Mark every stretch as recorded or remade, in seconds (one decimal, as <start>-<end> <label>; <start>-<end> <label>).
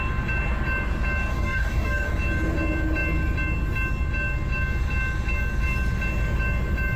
0.0-1.3 recorded; 1.3-2.1 remade; 2.1-7.0 recorded